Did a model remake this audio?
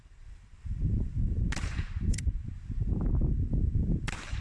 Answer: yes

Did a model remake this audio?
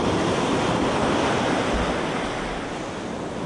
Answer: no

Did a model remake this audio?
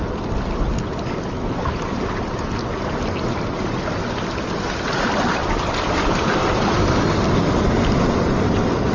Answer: no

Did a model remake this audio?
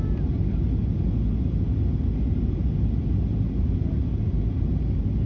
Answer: no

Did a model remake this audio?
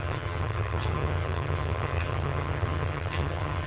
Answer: yes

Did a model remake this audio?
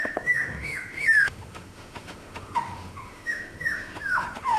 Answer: yes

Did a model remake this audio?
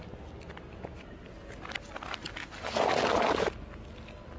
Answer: no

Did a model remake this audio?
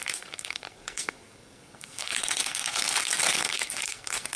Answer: yes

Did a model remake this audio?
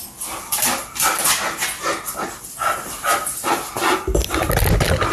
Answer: no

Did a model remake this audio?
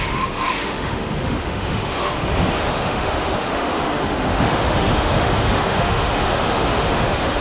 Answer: yes